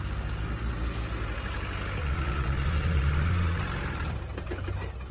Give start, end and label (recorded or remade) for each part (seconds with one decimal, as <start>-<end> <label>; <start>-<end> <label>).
0.0-2.0 recorded; 2.0-3.6 remade; 3.6-5.1 recorded